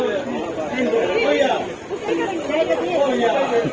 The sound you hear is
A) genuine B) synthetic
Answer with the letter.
A